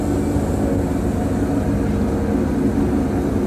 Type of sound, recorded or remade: recorded